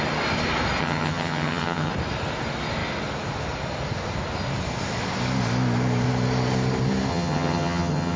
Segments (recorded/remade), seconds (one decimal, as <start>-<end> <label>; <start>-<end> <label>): 0.0-0.8 recorded; 0.8-1.9 remade; 1.9-7.1 recorded; 7.1-8.2 remade